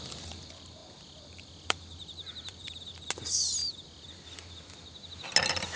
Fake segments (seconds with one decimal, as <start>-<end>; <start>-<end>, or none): 0.8-2.9; 3.6-4.7